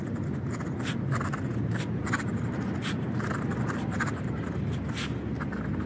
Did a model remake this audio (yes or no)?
no